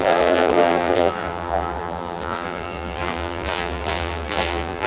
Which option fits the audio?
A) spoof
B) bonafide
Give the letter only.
A